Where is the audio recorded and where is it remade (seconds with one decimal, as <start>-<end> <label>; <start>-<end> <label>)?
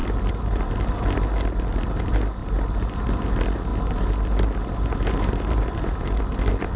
0.0-2.4 recorded; 2.4-3.1 remade; 3.1-3.7 recorded; 3.7-6.2 remade; 6.2-6.8 recorded